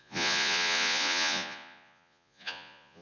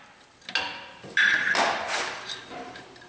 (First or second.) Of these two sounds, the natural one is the second